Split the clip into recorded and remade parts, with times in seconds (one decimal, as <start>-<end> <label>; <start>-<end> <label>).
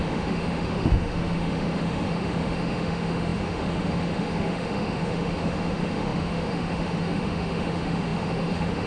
0.0-8.9 remade